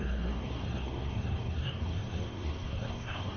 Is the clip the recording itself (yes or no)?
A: no